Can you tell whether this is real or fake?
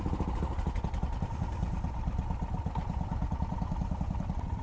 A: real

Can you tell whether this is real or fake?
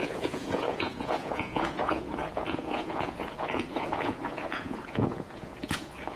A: fake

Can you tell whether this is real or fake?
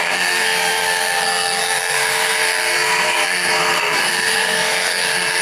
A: fake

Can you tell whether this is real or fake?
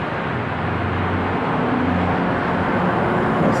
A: real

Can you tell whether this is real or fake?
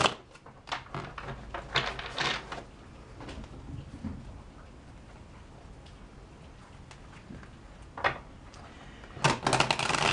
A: real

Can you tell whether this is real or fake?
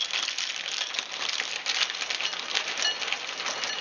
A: real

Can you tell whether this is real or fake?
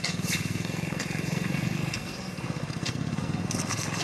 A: fake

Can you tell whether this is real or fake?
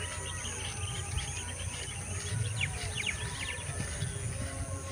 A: real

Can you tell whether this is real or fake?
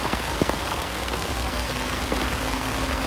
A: fake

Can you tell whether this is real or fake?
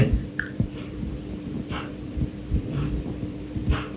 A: fake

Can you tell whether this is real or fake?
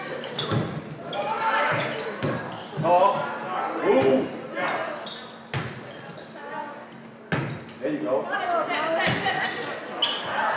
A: real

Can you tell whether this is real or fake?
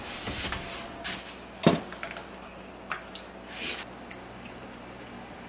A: real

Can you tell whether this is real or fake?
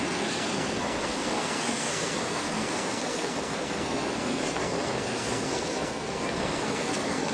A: fake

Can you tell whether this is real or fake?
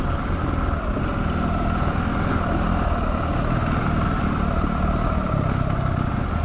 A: real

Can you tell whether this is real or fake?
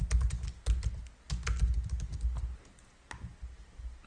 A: real